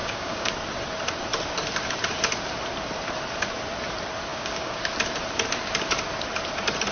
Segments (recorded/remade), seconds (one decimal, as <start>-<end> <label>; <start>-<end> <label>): 0.0-0.5 remade; 0.5-4.3 recorded; 4.3-4.8 remade; 4.8-6.9 recorded